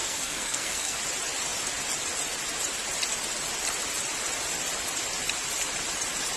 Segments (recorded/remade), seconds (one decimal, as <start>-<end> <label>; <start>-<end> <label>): 0.0-1.0 remade; 1.0-6.4 recorded